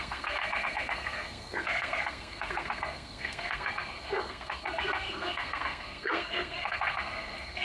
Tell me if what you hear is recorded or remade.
remade